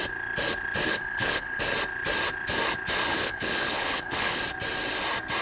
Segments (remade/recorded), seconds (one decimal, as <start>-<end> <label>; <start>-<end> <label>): 0.0-0.8 recorded; 0.8-1.6 remade; 1.6-3.1 recorded; 3.1-4.4 remade; 4.4-5.4 recorded